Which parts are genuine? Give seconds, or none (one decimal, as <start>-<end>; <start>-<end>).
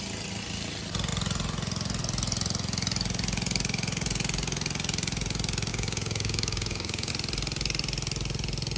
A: 0.0-5.7; 7.1-8.8